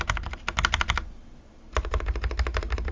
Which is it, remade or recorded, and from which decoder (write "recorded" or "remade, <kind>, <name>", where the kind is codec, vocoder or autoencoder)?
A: recorded